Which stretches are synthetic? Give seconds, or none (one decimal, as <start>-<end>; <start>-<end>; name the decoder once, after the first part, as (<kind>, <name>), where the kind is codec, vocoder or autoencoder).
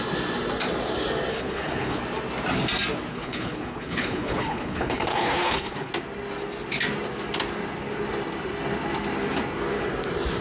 1.3-2.0 (codec, HILCodec); 3.1-5.9